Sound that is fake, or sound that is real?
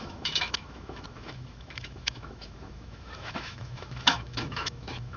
fake